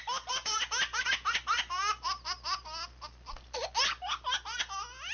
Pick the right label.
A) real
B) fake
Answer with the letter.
A